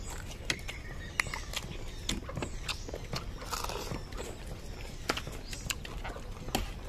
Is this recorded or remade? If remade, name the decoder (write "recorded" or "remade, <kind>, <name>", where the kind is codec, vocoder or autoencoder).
recorded